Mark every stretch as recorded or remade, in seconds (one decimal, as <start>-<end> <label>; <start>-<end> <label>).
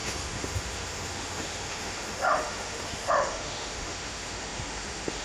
0.0-5.2 remade